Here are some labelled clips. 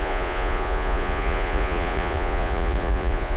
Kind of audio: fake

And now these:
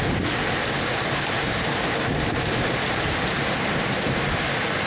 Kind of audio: real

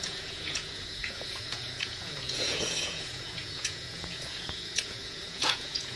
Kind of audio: fake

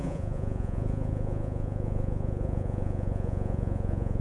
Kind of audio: fake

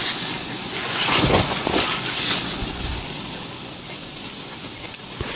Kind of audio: fake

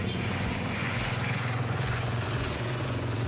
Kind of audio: fake